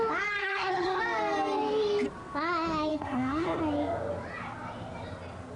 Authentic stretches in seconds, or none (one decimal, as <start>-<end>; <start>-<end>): 0.0-0.4; 1.0-2.9; 3.6-5.6